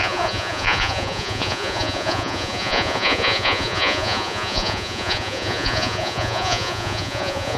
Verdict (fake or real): fake